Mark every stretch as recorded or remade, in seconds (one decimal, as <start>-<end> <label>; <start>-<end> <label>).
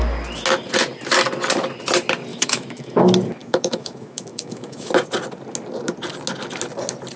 0.0-2.3 recorded; 2.3-3.0 remade; 3.0-3.4 recorded; 3.4-4.9 remade; 4.9-7.2 recorded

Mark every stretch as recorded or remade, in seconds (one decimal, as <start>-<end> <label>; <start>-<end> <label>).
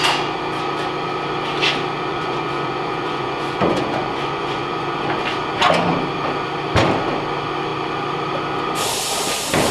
0.0-2.1 recorded; 2.1-5.1 remade; 5.1-9.7 recorded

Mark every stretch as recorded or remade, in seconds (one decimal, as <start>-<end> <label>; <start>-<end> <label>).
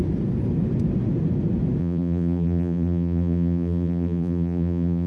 0.0-1.8 recorded; 1.8-5.1 remade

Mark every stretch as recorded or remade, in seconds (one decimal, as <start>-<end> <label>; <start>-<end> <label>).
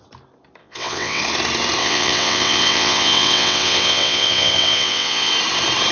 0.0-0.6 recorded; 0.6-1.2 remade; 1.2-1.8 recorded; 1.8-5.3 remade; 5.3-5.9 recorded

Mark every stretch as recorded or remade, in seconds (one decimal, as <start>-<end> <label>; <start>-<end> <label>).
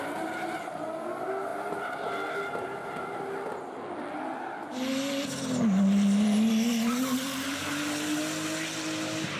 0.0-9.4 recorded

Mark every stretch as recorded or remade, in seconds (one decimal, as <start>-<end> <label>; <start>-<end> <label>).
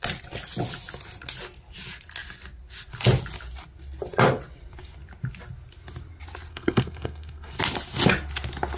0.0-6.5 recorded; 6.5-7.6 remade; 7.6-8.8 recorded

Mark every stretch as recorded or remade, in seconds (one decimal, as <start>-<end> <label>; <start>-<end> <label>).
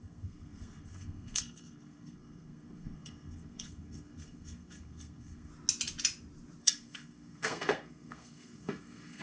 0.0-5.5 remade; 5.5-6.6 recorded; 6.6-9.2 remade